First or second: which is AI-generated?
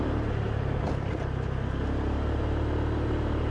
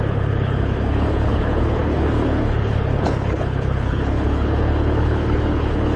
second